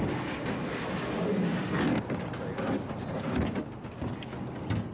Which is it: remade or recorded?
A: recorded